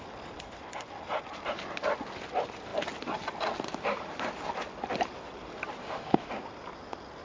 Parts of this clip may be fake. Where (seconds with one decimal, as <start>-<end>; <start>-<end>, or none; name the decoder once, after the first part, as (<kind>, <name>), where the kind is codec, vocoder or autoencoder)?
5.8-6.3 (autoencoder, DAC-VAE)